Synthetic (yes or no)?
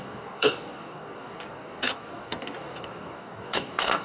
yes